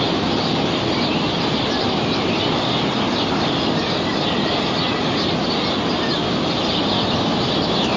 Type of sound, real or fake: real